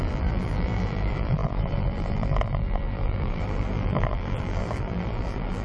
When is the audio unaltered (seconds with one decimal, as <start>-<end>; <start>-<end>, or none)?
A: none